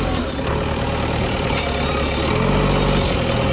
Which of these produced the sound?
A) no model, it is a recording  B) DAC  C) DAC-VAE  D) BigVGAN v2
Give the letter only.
A